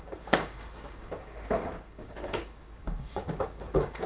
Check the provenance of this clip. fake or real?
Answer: fake